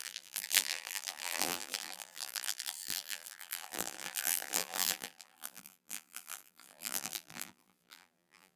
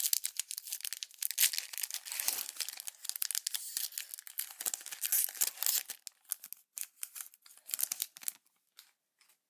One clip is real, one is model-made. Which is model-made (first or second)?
first